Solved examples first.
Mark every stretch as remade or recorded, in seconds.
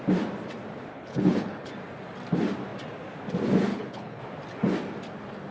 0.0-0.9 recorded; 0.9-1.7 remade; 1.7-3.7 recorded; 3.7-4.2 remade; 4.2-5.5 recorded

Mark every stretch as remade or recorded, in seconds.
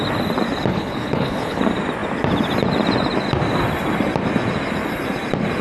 0.0-0.7 recorded; 0.7-1.6 remade; 1.6-5.6 recorded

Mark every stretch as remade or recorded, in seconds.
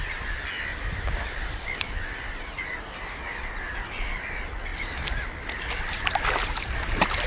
0.0-0.7 recorded; 0.7-2.3 remade; 2.3-7.3 recorded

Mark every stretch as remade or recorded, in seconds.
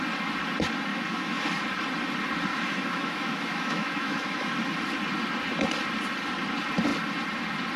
0.0-0.9 recorded; 0.9-1.4 remade; 1.4-2.5 recorded; 2.5-4.5 remade; 4.5-7.8 recorded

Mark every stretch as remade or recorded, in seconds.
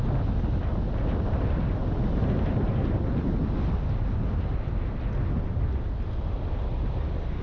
0.0-7.4 recorded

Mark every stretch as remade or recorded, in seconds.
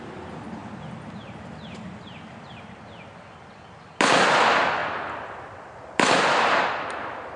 0.0-0.6 recorded; 0.6-2.6 remade; 2.6-4.8 recorded; 4.8-6.2 remade; 6.2-7.4 recorded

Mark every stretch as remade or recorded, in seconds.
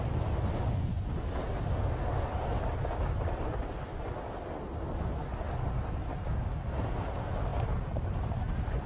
0.0-8.9 recorded